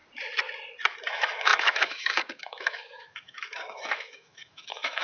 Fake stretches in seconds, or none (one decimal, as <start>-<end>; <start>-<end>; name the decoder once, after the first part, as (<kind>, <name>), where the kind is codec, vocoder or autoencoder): 1.1-5.0 (autoencoder, DAC-VAE)